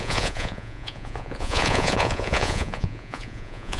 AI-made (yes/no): yes